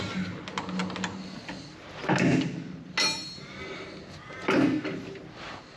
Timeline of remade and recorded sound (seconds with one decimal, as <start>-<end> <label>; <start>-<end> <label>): 0.0-5.8 recorded